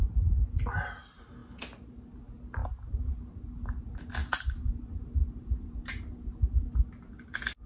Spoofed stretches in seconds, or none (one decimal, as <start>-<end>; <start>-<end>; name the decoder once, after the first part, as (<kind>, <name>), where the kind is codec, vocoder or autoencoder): 2.6-3.4 (vocoder, BigVGAN v2); 4.2-6.0